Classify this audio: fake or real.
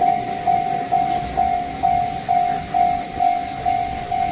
real